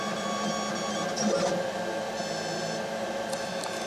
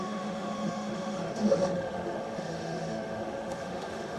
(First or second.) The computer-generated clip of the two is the second